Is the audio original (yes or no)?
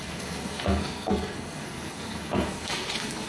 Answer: no